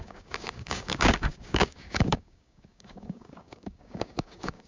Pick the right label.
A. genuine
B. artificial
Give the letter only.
B